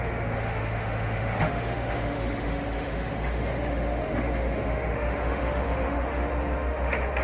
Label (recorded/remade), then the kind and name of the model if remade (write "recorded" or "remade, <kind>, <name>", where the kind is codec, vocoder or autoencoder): remade, autoencoder, DAC-VAE